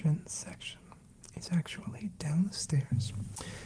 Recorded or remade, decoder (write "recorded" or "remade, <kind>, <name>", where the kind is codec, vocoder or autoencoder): recorded